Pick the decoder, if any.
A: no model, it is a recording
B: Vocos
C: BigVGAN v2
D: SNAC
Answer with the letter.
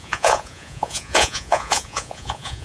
B